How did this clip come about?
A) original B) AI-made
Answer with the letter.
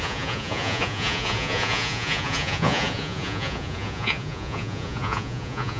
B